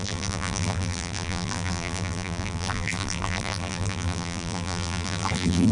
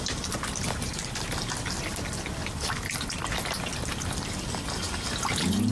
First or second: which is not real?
first